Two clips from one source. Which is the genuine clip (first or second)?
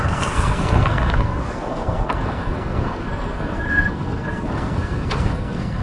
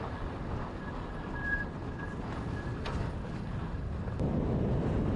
second